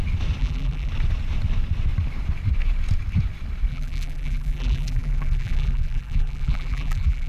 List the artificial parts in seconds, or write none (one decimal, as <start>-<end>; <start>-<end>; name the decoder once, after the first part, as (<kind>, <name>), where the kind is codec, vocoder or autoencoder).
0.4-0.9 (vocoder, BigVGAN v2); 3.7-7.3